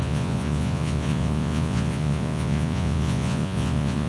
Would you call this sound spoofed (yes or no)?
yes